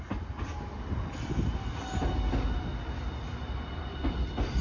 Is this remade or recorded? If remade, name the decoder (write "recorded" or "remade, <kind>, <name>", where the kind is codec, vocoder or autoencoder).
recorded